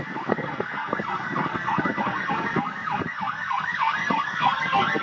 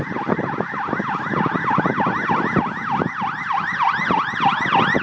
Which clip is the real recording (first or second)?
second